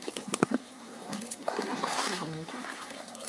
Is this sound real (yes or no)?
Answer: no